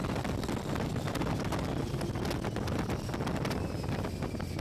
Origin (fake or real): real